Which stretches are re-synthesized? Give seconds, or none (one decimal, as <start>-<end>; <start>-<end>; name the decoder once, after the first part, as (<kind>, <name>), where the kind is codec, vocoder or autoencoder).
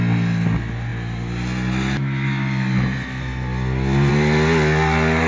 none